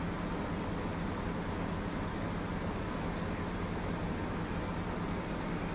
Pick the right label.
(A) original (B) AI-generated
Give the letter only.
A